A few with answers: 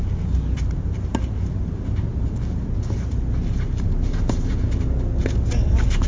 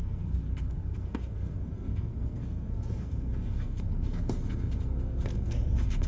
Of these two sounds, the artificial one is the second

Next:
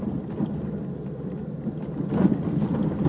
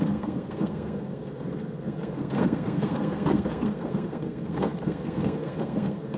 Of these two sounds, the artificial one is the second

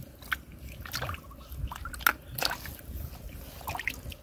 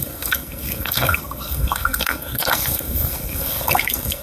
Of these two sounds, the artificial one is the second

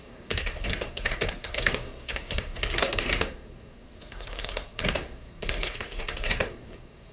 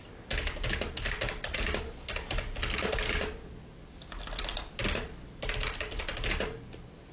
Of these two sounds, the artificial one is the first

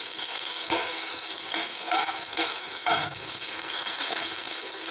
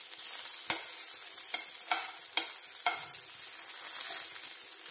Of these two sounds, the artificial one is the first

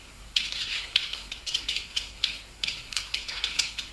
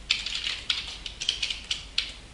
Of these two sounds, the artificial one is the first